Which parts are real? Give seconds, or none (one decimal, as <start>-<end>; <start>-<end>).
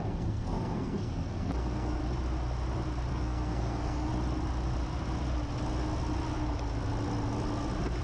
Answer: 2.0-3.1; 4.1-8.0